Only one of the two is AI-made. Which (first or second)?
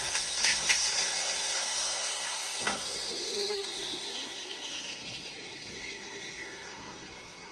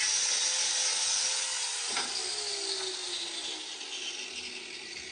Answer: first